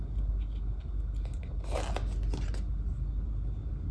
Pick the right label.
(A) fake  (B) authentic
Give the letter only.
B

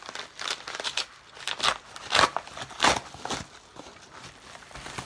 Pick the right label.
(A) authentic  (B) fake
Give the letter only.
A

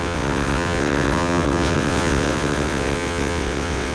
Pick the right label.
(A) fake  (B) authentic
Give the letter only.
A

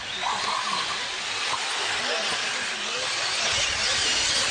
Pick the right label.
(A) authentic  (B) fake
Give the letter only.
A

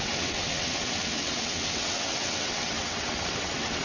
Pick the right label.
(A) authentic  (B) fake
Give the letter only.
B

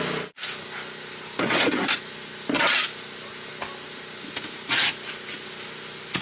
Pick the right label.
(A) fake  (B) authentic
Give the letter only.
B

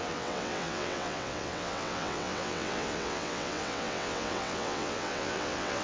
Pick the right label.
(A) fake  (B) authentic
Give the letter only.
A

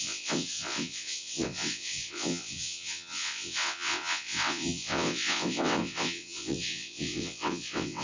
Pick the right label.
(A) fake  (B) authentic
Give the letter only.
A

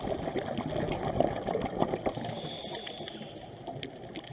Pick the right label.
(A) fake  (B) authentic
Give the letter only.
B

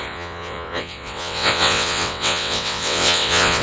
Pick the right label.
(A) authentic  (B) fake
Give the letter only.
B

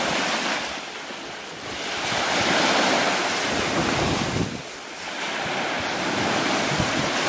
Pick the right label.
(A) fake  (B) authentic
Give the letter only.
B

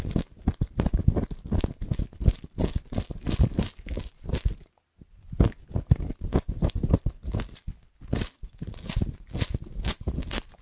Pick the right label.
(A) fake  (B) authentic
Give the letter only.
B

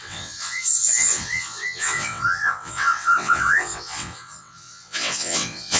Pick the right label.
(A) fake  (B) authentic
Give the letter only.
A